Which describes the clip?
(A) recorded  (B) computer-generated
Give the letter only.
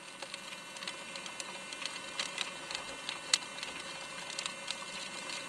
A